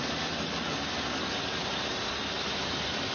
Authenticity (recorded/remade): recorded